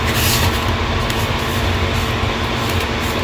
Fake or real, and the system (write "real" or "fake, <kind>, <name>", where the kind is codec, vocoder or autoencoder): real